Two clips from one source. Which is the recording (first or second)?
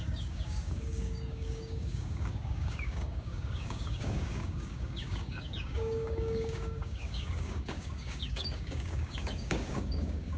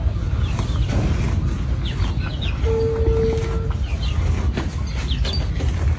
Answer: second